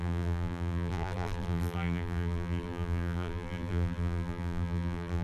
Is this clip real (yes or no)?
no